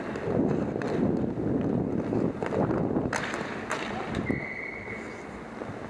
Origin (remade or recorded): recorded